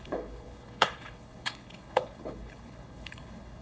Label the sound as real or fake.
fake